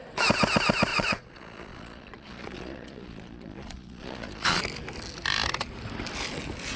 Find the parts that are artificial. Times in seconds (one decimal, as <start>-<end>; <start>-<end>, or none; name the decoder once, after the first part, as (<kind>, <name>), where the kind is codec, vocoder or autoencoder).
0.9-4.6 (vocoder, Vocos)